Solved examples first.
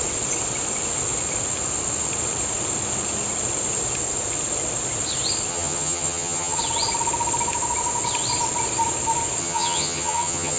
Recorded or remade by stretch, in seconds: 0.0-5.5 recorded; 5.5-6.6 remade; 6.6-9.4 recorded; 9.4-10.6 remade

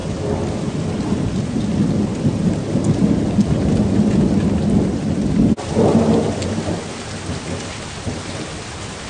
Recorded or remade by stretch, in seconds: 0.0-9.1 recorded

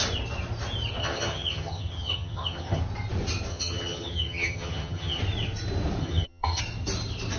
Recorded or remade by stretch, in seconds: 0.0-1.0 recorded; 1.0-2.8 remade; 2.8-3.5 recorded; 3.5-5.2 remade; 5.2-6.0 recorded; 6.0-6.6 remade; 6.6-7.4 recorded

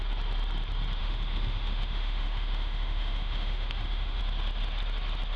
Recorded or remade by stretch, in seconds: 0.0-1.0 recorded; 1.0-4.2 remade; 4.2-5.4 recorded